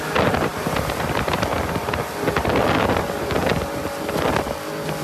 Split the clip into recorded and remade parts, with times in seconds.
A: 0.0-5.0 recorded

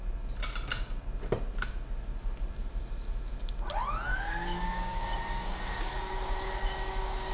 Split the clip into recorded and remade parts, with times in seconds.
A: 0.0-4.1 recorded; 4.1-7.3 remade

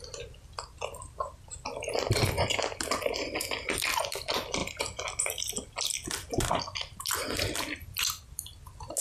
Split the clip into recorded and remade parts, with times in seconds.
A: 0.0-9.0 recorded

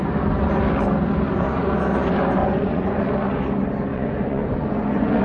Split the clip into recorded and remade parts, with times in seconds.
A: 0.0-2.4 recorded; 2.4-3.0 remade; 3.0-3.9 recorded; 3.9-5.2 remade